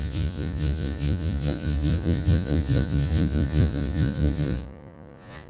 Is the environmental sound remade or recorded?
remade